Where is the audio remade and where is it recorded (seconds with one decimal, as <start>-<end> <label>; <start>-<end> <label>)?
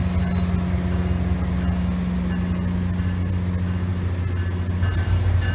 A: 0.0-5.5 recorded